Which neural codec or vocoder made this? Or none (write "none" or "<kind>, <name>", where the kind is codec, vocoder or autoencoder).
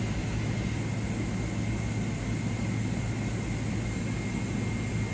none